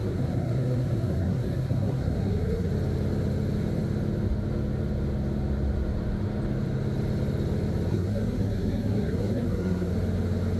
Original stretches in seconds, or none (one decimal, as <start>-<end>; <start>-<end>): 2.7-7.9; 9.9-10.6